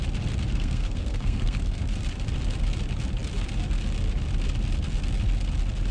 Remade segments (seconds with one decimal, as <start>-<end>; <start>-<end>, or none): 0.5-1.8